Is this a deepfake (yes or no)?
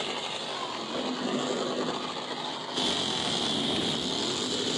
no